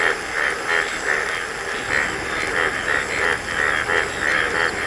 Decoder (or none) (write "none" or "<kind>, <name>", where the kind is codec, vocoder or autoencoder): none